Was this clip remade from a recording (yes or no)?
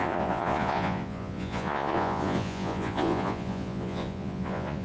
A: yes